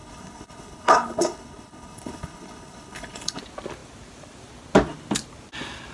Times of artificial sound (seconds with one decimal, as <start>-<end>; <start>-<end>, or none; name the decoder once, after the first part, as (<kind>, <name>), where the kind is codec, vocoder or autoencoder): 0.0-3.4 (codec, HILCodec)